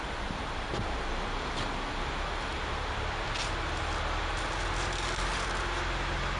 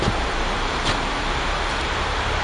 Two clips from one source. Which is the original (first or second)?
first